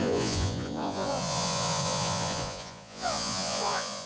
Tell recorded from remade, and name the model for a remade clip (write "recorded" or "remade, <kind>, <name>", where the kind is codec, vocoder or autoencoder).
remade, vocoder, Vocos